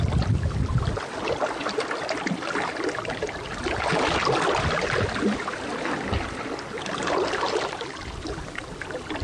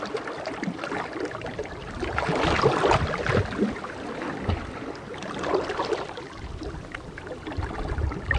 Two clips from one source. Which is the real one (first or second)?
first